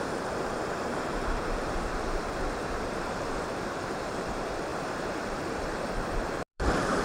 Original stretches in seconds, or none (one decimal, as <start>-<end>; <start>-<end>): none